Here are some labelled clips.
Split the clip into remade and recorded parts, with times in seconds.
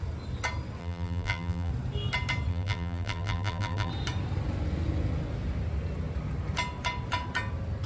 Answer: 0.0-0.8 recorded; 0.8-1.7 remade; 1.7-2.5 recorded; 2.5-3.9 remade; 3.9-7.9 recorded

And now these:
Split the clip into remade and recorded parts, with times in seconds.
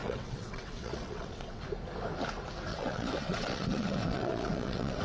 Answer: 0.0-1.6 remade; 1.6-2.7 recorded; 2.7-5.0 remade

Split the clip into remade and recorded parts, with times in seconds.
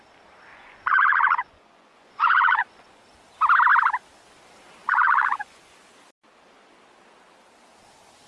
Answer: 0.0-0.5 recorded; 0.5-3.0 remade; 3.0-4.8 recorded; 4.8-5.6 remade; 5.6-8.3 recorded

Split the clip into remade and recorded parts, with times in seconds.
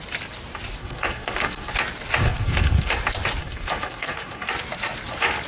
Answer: 0.0-0.8 recorded; 0.8-1.7 remade; 1.7-2.2 recorded; 2.2-2.9 remade; 2.9-3.4 recorded; 3.4-4.5 remade; 4.5-5.5 recorded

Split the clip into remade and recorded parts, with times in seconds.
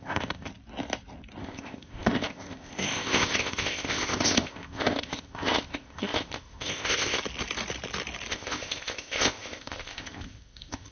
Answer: 0.0-0.5 remade; 0.5-1.4 recorded; 1.4-7.2 remade; 7.2-8.3 recorded; 8.3-10.9 remade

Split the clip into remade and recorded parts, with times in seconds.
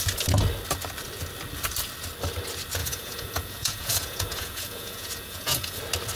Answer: 0.0-2.8 recorded; 2.8-5.8 remade; 5.8-6.2 recorded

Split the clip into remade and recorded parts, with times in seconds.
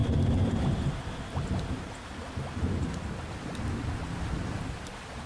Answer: 0.0-5.3 recorded